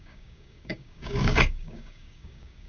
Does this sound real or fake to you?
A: fake